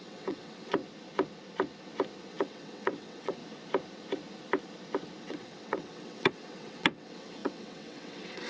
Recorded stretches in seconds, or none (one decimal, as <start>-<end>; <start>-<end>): 0.8-2.3; 3.4-5.2